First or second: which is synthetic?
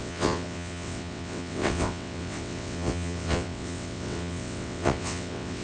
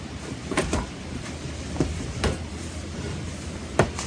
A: first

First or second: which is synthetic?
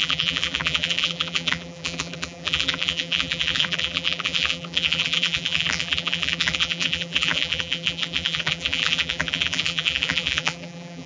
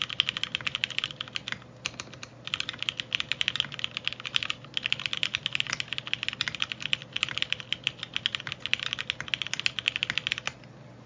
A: first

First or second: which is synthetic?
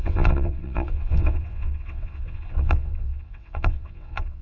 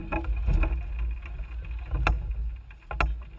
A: first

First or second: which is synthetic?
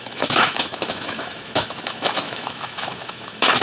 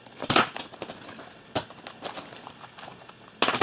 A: first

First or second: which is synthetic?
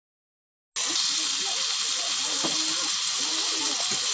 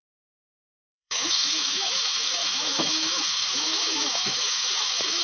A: second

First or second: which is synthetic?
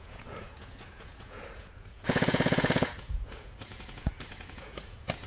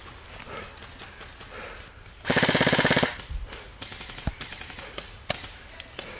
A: first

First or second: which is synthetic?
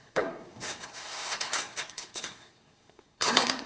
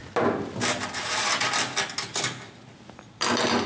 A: first